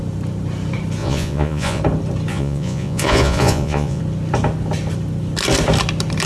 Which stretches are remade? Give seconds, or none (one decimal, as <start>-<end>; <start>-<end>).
1.0-1.8; 2.3-4.0